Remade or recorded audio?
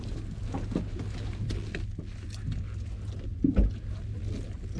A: recorded